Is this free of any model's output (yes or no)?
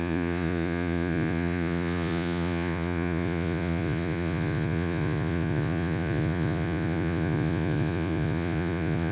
no